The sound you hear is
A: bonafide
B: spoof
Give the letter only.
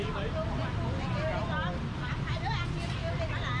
A